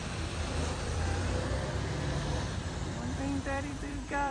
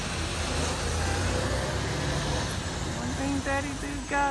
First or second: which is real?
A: second